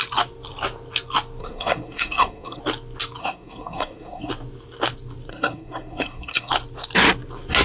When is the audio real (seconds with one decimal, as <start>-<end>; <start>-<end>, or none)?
0.0-1.4; 2.6-3.2; 4.3-5.3; 6.5-7.6

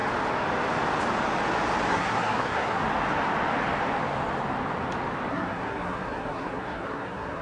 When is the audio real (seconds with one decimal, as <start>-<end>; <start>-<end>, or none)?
0.0-1.9; 2.8-5.3

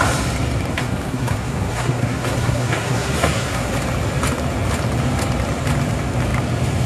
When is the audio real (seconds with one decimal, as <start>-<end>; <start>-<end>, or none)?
0.0-0.7; 3.7-6.9